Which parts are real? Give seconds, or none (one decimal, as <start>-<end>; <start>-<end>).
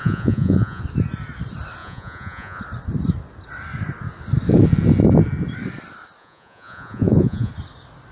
0.8-1.8; 2.6-6.2; 7.5-8.1